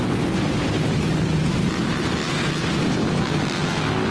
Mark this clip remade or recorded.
recorded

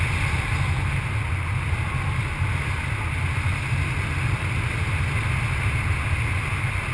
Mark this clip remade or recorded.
recorded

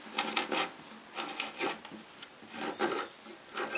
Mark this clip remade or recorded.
recorded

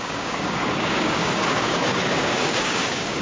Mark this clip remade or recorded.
remade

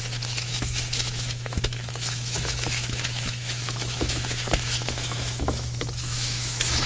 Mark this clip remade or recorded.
remade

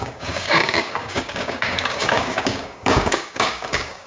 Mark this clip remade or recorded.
remade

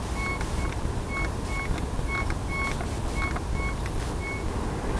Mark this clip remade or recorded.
recorded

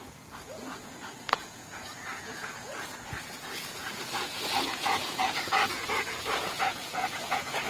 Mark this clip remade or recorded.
remade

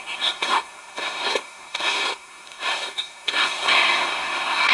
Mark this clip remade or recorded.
remade